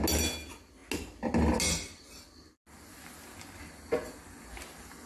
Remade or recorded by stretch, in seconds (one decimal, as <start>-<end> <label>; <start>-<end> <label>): 0.0-5.1 recorded